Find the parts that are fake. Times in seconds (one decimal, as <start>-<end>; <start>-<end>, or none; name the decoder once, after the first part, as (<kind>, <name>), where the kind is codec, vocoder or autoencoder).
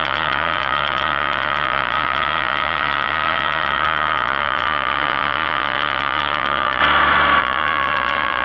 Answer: 0.0-6.8 (vocoder, Vocos); 7.4-8.4